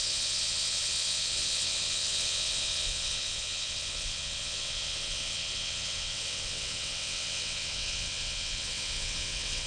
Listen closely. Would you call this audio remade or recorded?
remade